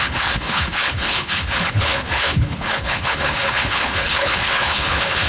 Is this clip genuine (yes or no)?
no